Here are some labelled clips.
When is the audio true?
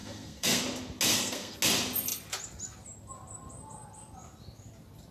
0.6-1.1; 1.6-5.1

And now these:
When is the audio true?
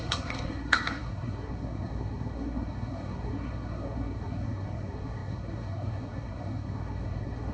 none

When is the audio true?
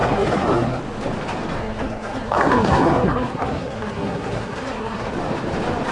0.8-1.6; 5.1-5.9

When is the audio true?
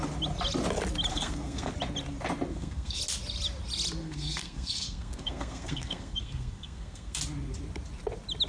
0.0-1.1; 1.7-2.5; 3.0-4.0; 7.2-8.5